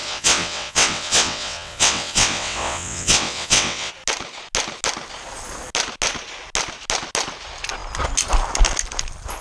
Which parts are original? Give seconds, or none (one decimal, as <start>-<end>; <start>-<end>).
3.9-9.4